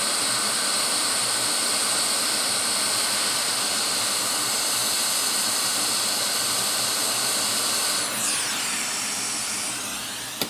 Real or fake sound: fake